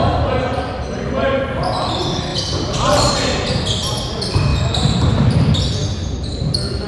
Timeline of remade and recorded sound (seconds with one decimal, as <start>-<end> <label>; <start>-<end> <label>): 0.0-2.3 recorded; 2.3-3.1 remade; 3.1-4.5 recorded; 4.5-5.6 remade; 5.6-6.9 recorded

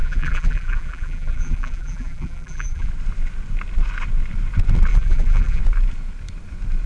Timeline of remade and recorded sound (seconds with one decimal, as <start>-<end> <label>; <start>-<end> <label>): 0.0-2.9 remade; 2.9-4.9 recorded; 4.9-5.6 remade; 5.6-6.9 recorded

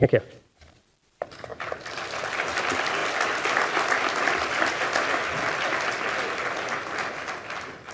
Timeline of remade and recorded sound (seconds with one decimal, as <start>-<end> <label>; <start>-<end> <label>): 0.0-7.9 recorded

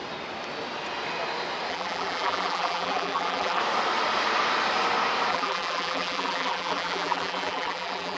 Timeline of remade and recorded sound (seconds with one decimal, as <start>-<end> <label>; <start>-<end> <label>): 0.0-1.7 recorded; 1.7-3.6 remade; 3.6-5.3 recorded; 5.3-8.2 remade

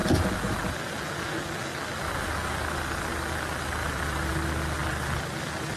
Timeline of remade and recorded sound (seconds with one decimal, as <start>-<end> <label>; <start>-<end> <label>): 0.0-3.8 recorded; 3.8-4.3 remade; 4.3-4.8 recorded; 4.8-5.8 remade

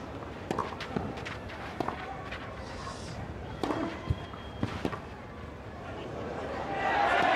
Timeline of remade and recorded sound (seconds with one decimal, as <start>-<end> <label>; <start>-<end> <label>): 0.0-0.6 recorded; 0.6-5.0 remade; 5.0-7.4 recorded

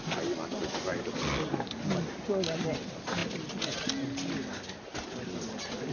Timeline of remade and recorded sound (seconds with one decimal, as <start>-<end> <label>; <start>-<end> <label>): 0.0-0.5 recorded; 0.5-1.0 remade; 1.0-4.9 recorded; 4.9-5.5 remade; 5.5-5.9 recorded